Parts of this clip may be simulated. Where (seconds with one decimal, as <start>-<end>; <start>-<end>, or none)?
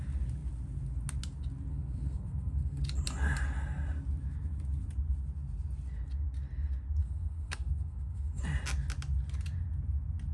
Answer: 1.7-2.8; 7.0-8.4